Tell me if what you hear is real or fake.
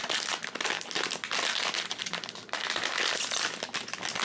real